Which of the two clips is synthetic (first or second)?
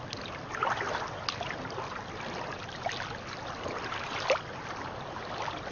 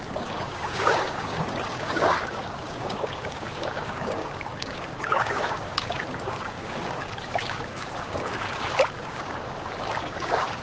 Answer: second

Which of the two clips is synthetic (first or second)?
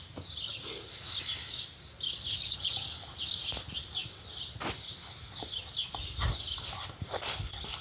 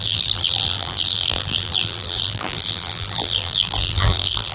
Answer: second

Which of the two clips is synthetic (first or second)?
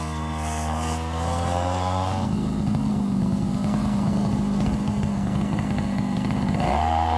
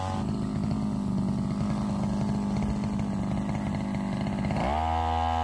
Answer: first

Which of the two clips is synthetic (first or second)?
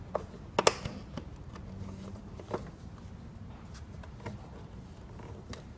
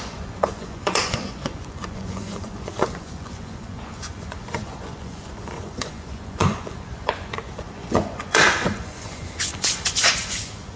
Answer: second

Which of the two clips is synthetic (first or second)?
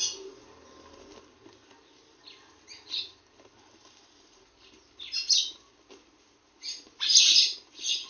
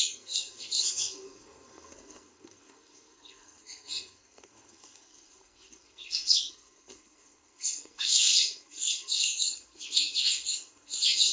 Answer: second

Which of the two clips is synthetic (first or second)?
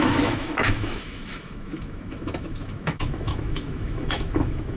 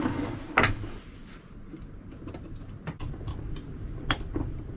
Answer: first